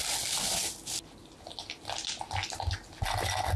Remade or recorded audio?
recorded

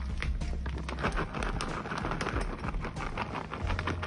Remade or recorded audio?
recorded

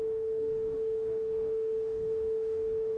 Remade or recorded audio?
remade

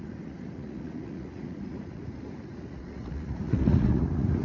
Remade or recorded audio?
remade